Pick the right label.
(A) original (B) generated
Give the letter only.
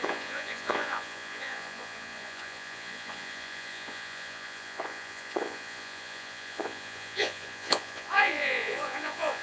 B